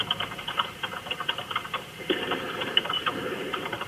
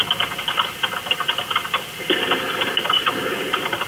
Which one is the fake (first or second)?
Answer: first